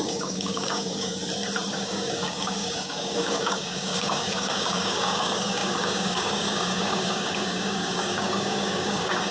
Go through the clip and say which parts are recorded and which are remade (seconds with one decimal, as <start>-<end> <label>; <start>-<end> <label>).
0.0-1.2 remade; 1.2-1.7 recorded; 1.7-9.3 remade